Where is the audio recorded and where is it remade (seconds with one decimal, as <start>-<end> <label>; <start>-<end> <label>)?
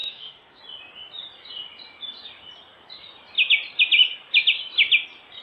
0.0-0.6 remade; 0.6-5.4 recorded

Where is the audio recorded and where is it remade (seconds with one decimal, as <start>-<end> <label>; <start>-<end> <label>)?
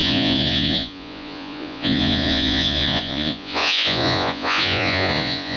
0.0-5.6 remade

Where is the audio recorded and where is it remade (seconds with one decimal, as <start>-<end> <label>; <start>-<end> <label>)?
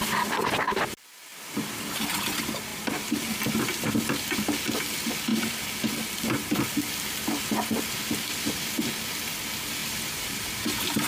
0.0-1.3 recorded; 1.3-2.0 remade; 2.0-2.7 recorded; 2.7-4.0 remade; 4.0-9.8 recorded; 9.8-10.6 remade; 10.6-11.1 recorded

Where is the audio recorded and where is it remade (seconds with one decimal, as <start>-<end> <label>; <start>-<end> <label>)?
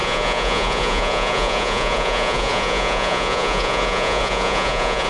0.0-5.1 remade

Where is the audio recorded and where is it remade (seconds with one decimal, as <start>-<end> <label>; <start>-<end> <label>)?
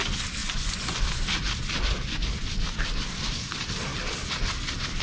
0.0-0.4 recorded; 0.4-1.0 remade; 1.0-5.0 recorded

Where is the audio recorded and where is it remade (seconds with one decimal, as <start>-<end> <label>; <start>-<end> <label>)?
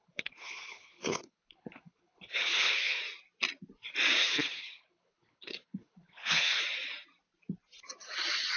0.0-3.0 remade; 3.0-4.2 recorded; 4.2-6.6 remade; 6.6-8.6 recorded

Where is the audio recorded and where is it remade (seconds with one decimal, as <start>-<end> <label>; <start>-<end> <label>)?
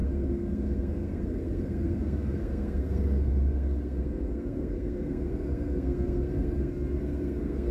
0.0-7.7 remade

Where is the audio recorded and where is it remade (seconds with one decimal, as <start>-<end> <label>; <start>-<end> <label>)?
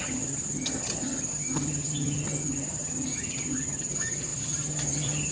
0.0-5.3 remade